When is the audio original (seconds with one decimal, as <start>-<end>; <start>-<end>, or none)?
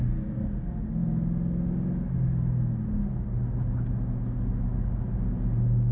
0.0-5.9